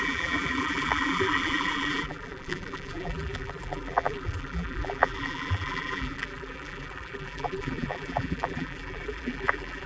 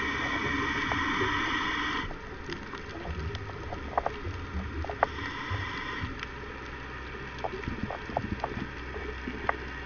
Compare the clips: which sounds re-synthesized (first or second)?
first